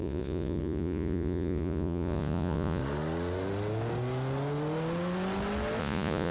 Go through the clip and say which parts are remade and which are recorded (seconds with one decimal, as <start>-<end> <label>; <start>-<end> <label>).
0.0-2.8 remade; 2.8-5.8 recorded; 5.8-6.3 remade